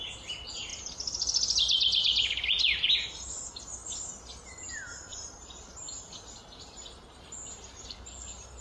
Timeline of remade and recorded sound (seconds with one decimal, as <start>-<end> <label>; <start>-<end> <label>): 0.0-8.6 recorded